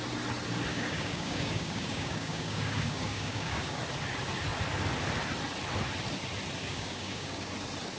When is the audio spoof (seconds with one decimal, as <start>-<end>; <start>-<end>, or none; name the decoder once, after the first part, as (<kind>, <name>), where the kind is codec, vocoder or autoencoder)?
0.7-3.8 (codec, DAC); 6.6-7.5